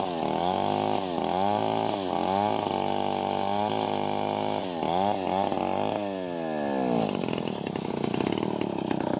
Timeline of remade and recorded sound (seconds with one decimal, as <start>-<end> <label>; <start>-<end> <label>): 0.0-9.2 recorded